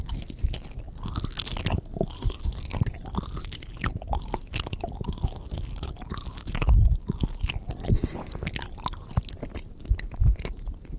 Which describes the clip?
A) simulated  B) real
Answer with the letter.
A